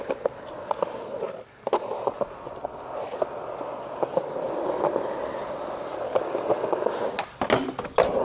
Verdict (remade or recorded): recorded